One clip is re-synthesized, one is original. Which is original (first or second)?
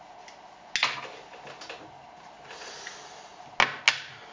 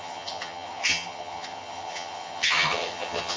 first